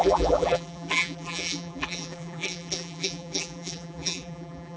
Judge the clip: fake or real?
fake